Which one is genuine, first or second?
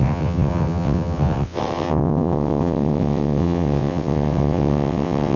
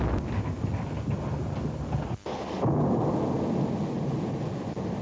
second